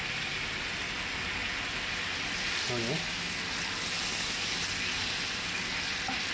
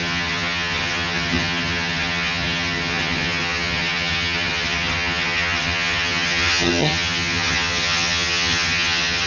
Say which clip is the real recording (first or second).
first